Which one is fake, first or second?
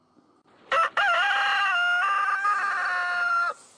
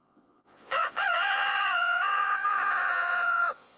second